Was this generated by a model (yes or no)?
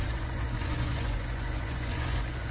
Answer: yes